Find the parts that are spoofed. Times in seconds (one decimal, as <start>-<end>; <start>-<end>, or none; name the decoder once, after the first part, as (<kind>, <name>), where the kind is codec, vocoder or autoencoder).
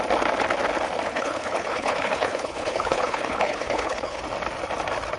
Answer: 1.1-4.2 (codec, HILCodec)